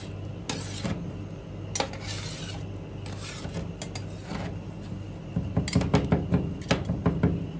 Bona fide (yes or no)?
yes